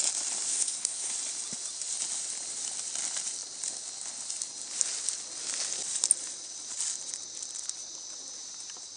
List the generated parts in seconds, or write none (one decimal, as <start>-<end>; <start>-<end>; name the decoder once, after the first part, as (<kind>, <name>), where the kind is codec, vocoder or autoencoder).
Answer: 0.5-1.1 (codec, SNAC)